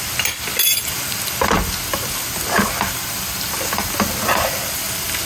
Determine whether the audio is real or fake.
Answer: real